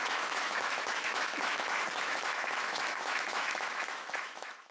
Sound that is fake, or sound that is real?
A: fake